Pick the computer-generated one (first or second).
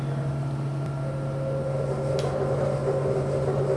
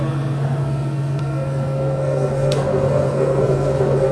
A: second